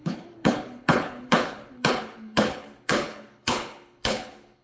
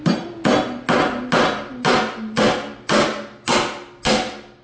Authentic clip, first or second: second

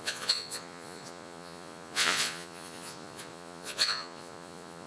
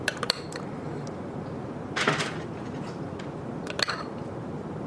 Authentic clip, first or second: second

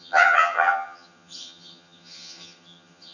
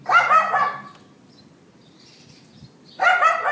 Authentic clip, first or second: second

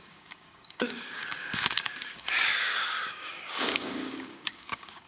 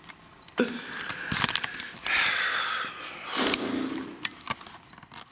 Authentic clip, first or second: second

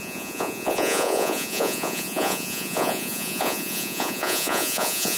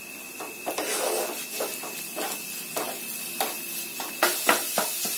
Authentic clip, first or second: second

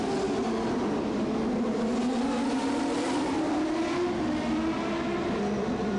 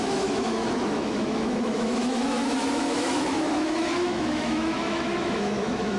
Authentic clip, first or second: first